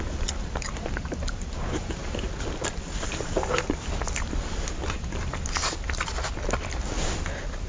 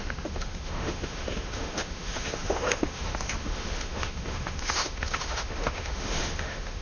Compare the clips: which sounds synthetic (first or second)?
second